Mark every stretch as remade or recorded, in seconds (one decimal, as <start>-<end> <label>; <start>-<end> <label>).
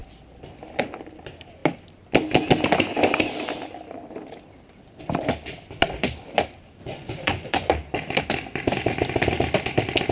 0.0-6.8 recorded; 6.8-7.7 remade; 7.7-10.1 recorded